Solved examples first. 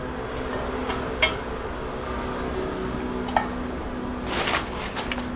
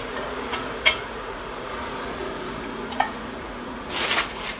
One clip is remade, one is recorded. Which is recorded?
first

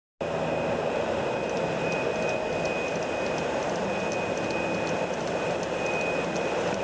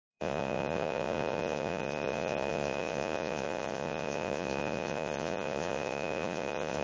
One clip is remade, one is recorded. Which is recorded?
first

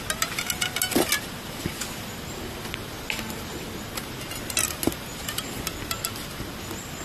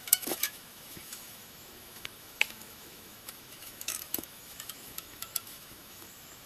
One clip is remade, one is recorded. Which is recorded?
first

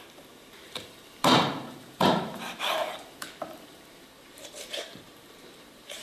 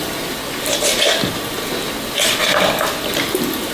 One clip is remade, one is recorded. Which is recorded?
second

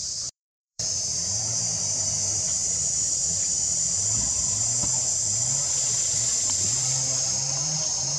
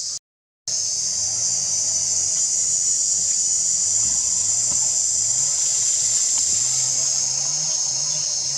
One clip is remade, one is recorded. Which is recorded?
second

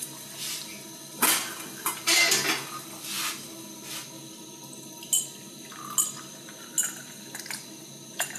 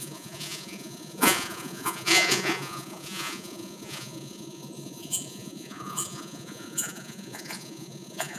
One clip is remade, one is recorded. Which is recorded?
first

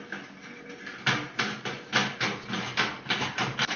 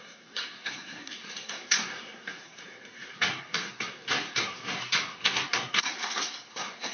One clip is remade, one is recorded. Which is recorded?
first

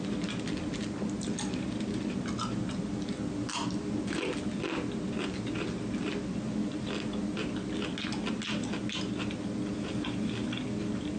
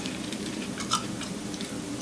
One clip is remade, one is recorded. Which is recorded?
first